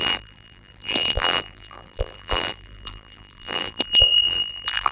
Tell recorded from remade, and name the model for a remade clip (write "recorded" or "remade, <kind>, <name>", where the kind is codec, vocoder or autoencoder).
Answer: remade, vocoder, BigVGAN v2